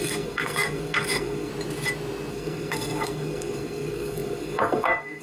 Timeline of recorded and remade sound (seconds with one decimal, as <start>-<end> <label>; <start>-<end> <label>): 0.0-1.5 remade; 1.5-2.3 recorded; 2.3-5.2 remade